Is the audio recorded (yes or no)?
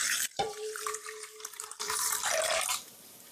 no